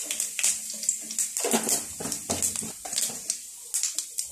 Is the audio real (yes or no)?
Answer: yes